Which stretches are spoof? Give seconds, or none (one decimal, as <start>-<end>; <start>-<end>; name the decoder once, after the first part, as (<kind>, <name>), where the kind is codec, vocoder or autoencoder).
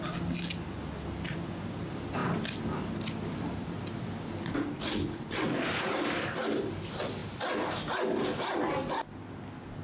none